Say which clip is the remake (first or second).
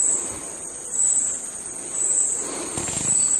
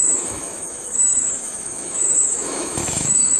second